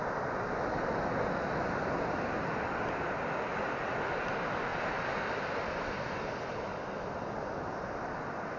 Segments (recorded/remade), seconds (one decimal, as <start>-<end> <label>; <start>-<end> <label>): 0.0-8.6 recorded